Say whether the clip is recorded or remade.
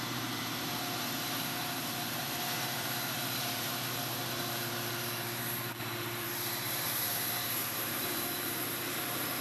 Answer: remade